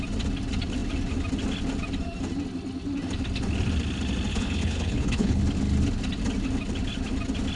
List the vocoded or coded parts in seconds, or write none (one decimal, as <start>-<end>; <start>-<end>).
4.3-5.4